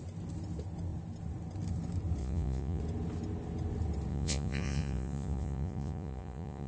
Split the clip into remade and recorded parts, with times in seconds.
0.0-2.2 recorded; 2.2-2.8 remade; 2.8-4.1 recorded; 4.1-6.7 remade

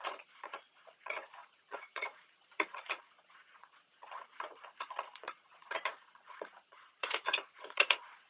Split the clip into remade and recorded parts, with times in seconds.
0.0-8.3 remade

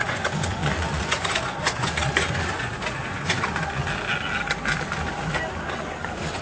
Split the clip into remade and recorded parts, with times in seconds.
0.0-3.8 remade; 3.8-5.7 recorded; 5.7-6.4 remade

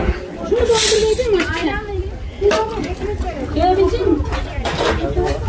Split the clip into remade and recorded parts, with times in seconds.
0.0-5.5 recorded

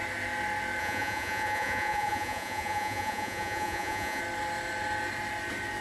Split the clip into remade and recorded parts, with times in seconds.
0.0-0.8 recorded; 0.8-4.2 remade; 4.2-5.8 recorded